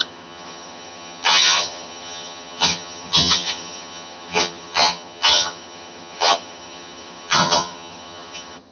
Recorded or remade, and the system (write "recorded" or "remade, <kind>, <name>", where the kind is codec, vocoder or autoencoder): remade, vocoder, HiFi-GAN